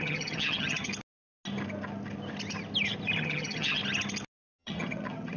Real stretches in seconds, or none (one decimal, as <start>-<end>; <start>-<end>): 0.9-3.2; 3.8-4.6